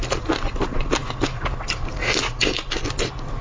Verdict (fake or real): real